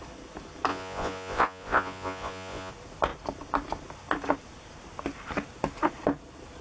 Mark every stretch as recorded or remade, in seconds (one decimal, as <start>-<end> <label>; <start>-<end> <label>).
0.0-0.7 recorded; 0.7-2.7 remade; 2.7-6.6 recorded